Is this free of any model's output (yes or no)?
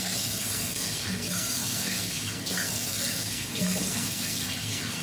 no